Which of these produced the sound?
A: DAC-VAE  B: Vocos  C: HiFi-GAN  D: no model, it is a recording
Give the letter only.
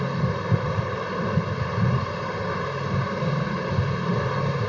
D